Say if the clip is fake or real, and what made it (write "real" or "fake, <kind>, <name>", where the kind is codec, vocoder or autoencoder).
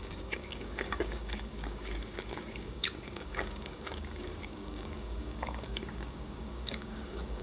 fake, codec, DAC